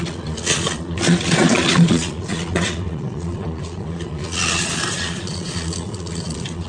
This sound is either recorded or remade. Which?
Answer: remade